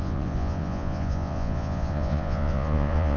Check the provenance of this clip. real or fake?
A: fake